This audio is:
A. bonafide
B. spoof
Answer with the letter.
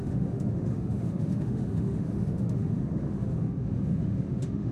B